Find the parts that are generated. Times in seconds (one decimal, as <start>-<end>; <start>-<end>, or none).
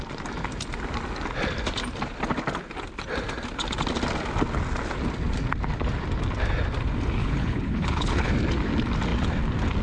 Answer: 7.2-8.3